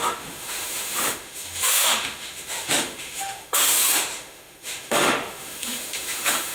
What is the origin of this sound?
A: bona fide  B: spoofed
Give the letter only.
B